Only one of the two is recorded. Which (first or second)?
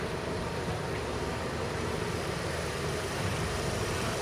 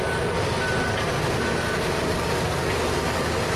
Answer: second